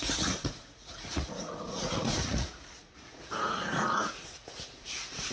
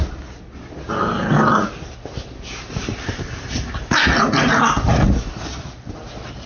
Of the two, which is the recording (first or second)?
second